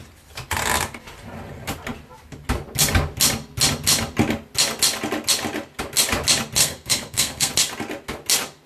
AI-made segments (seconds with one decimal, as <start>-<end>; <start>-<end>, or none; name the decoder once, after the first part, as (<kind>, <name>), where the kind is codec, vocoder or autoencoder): 6.6-7.5 (codec, SNAC)